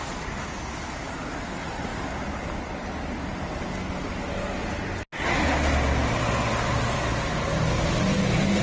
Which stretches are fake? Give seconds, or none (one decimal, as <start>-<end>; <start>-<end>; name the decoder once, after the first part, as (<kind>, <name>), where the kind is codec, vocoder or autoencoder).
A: none